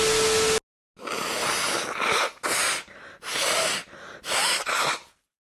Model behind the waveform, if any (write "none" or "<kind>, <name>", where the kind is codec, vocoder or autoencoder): none